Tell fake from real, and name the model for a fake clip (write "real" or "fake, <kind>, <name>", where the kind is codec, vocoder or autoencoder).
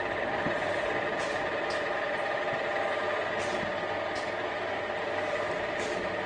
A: fake, vocoder, BigVGAN v2